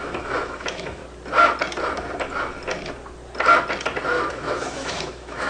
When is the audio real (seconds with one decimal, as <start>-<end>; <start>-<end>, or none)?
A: 1.0-4.3